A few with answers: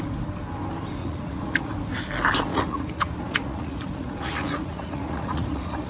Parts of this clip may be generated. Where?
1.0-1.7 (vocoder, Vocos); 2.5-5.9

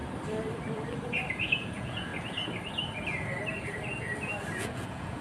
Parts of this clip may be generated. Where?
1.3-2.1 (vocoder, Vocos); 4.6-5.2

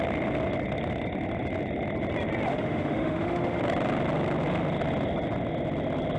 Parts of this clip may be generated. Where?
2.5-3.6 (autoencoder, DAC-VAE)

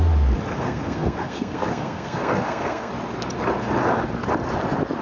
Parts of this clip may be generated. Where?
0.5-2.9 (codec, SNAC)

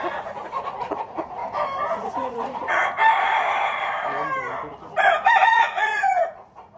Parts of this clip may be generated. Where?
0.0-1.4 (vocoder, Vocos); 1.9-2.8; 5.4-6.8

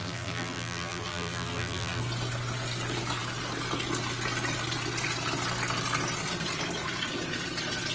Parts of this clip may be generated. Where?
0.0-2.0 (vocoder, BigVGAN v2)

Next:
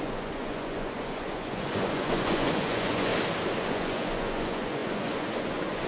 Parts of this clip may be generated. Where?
0.0-3.1 (vocoder, Vocos); 3.6-5.9

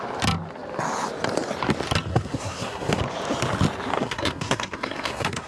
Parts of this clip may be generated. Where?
2.1-3.0 (codec, SNAC); 3.9-5.5